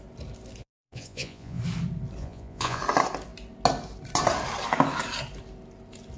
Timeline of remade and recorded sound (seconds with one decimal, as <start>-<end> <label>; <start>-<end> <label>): 0.0-0.6 recorded; 0.6-1.6 remade; 1.6-2.2 recorded; 2.2-2.8 remade; 2.8-6.2 recorded